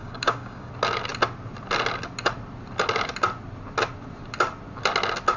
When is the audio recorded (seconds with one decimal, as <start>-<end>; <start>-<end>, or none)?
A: 0.7-5.4